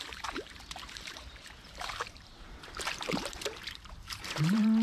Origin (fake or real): fake